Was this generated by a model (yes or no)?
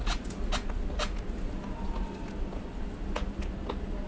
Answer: no